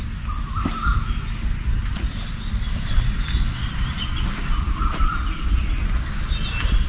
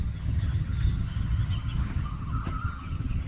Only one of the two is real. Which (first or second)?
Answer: first